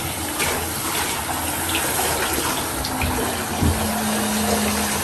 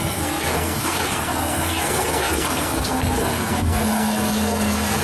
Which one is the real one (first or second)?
first